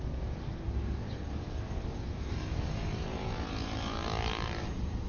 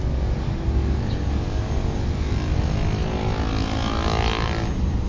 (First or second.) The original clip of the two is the second